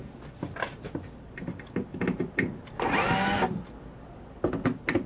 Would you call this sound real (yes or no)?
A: yes